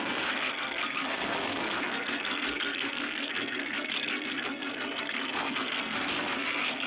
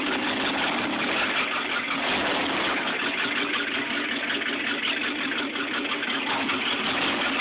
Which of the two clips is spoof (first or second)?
first